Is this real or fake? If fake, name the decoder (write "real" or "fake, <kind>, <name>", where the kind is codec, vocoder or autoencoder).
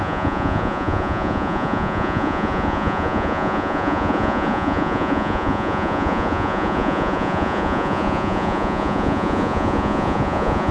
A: fake, vocoder, Vocos